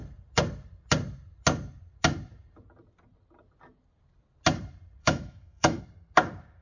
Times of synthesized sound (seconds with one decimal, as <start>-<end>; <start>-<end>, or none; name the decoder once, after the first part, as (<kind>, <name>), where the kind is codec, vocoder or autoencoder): 5.0-5.8 (autoencoder, DAC-VAE)